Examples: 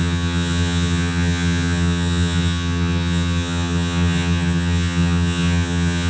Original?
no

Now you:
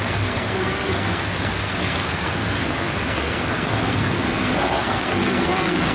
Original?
no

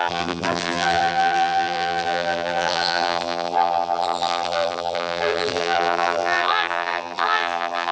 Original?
no